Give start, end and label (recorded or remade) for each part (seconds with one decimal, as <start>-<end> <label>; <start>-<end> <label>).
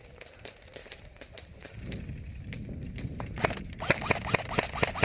0.0-5.0 recorded